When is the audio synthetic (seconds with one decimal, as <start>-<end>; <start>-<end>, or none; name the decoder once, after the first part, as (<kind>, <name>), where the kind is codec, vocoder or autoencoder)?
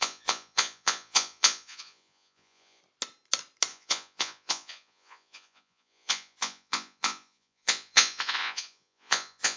0.0-2.8 (vocoder, Vocos); 3.7-9.6